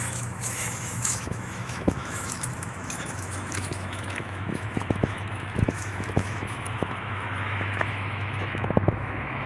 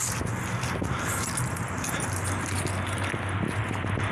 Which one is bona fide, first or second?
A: second